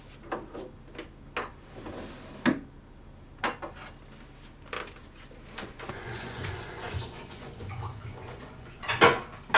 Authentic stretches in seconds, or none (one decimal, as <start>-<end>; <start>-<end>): 0.0-5.6; 9.2-9.6